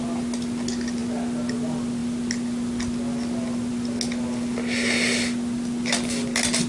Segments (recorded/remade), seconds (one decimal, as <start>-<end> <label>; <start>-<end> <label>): 0.0-6.7 recorded